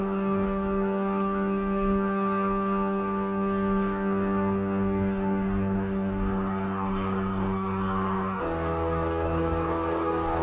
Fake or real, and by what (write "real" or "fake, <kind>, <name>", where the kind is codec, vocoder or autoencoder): fake, codec, DAC